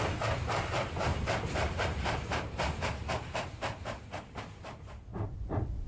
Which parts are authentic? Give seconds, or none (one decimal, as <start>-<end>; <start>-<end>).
0.0-1.1; 4.2-5.1